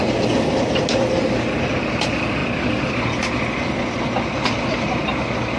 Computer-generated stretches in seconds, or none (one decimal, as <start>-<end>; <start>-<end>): none